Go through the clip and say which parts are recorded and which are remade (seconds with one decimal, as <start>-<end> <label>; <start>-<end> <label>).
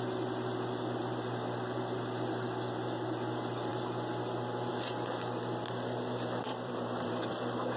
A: 0.0-6.5 recorded; 6.5-7.3 remade; 7.3-7.8 recorded